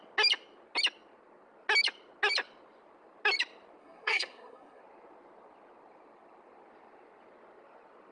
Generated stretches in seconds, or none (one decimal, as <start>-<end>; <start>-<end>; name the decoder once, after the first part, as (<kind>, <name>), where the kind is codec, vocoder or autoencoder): 3.8-4.8 (codec, SNAC)

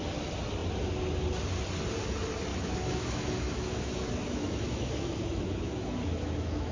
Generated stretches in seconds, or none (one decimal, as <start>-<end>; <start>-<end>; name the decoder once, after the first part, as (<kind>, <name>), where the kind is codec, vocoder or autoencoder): 2.5-6.7 (autoencoder, DAC-VAE)